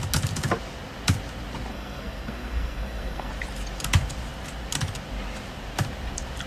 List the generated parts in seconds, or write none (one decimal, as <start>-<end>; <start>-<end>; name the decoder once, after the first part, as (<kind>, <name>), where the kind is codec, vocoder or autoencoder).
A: 1.7-3.3 (codec, SNAC)

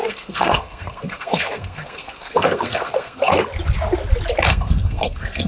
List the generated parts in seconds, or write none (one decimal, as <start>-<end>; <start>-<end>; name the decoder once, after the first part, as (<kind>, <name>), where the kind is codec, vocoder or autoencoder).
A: 0.0-3.3 (codec, SNAC); 4.5-5.5

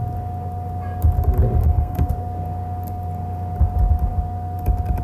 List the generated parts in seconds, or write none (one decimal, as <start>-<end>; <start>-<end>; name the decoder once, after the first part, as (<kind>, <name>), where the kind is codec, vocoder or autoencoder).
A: 1.6-2.1 (codec, SNAC)

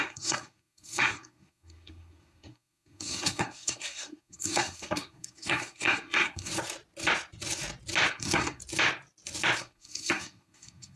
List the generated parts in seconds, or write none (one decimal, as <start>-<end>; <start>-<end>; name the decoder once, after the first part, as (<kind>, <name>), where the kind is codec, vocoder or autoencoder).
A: 0.0-6.5 (codec, SNAC); 8.1-8.6; 9.6-11.0

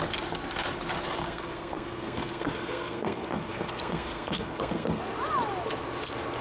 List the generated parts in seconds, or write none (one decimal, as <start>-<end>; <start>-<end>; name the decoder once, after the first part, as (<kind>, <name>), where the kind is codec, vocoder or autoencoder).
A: 1.2-5.0 (codec, SNAC)

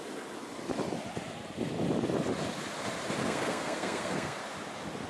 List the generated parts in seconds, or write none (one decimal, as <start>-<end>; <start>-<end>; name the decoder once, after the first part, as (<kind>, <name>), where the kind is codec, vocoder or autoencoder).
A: 3.2-4.4 (codec, SNAC)

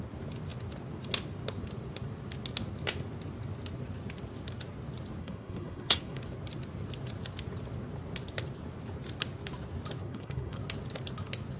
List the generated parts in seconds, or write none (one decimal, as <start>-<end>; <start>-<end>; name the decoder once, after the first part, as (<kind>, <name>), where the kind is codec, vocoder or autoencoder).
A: 5.2-6.2 (codec, SNAC); 10.0-10.6

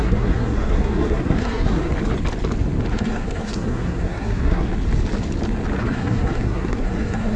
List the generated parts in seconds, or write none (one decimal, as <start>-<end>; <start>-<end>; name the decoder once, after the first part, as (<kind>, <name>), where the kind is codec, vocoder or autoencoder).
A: 0.0-1.9 (codec, SNAC); 2.9-4.7; 5.8-7.4